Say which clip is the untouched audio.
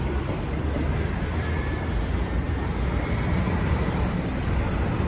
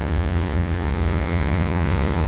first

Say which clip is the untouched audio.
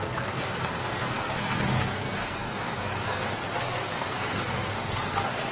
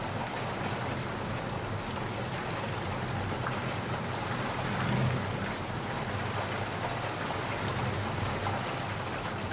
second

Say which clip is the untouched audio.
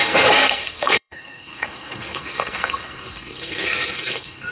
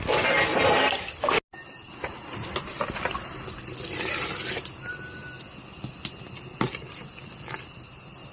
second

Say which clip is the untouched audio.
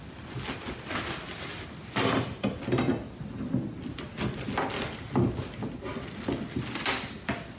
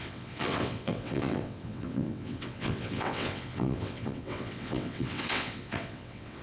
first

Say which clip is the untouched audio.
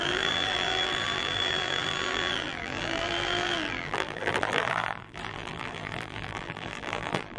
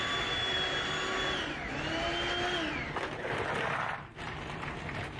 second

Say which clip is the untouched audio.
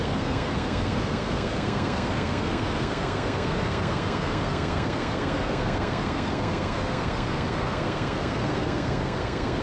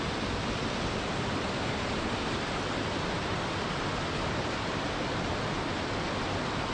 second